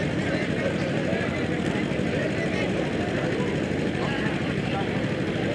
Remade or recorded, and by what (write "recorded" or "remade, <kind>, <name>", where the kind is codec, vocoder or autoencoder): recorded